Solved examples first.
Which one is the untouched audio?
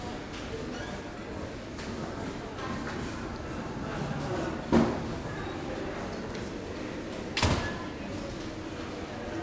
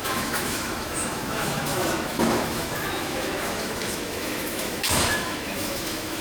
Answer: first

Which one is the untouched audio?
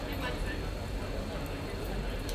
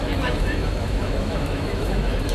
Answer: first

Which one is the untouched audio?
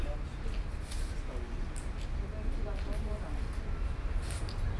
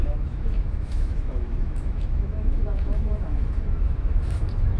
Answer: first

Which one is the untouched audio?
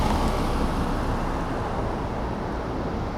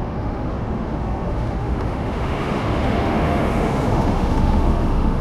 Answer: first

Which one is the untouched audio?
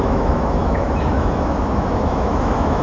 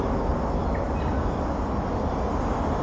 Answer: second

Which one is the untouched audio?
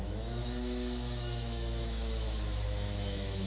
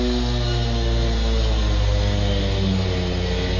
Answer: second